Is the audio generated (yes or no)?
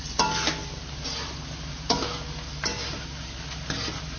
no